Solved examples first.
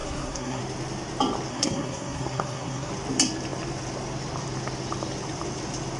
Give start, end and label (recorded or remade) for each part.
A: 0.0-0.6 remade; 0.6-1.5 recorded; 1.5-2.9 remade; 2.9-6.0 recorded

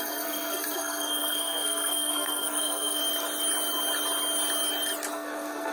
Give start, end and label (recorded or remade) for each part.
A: 0.0-3.0 remade; 3.0-5.1 recorded; 5.1-5.7 remade

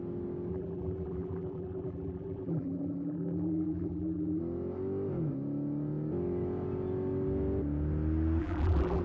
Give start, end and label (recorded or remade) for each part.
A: 0.0-0.5 recorded; 0.5-4.4 remade; 4.4-8.4 recorded; 8.4-9.0 remade